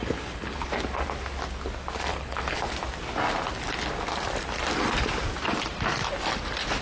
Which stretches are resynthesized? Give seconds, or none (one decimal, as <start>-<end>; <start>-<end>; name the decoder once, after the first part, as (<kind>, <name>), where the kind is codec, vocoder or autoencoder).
0.0-0.7 (codec, HILCodec); 2.1-2.6